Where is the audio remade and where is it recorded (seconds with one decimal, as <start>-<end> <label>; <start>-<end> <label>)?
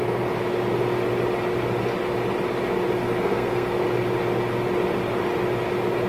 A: 0.0-3.0 recorded; 3.0-3.8 remade; 3.8-6.1 recorded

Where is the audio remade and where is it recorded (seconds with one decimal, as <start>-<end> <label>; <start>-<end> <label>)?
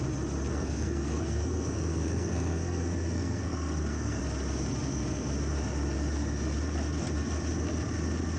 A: 0.0-0.5 recorded; 0.5-4.2 remade; 4.2-8.4 recorded